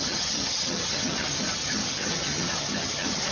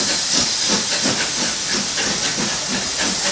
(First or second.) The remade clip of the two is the first